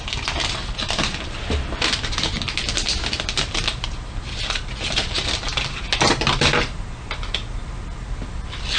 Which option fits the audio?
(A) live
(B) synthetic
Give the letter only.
A